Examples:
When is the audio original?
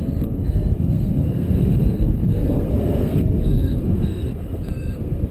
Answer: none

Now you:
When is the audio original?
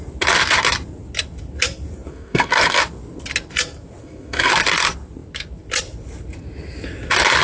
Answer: 0.0-2.1; 2.8-4.0; 4.5-7.4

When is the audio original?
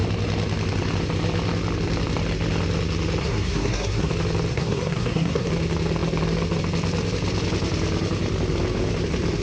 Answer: 0.0-3.2; 4.1-4.5; 5.5-9.4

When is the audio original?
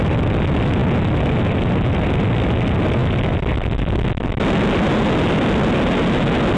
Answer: 0.0-6.6